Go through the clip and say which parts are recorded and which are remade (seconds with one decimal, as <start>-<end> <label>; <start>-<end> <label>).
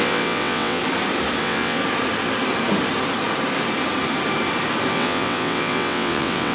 0.0-0.8 remade; 0.8-1.4 recorded; 1.4-1.8 remade; 1.8-4.9 recorded; 4.9-6.5 remade